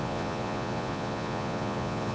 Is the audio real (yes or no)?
no